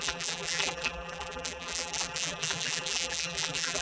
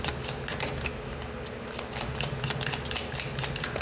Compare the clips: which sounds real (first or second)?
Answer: second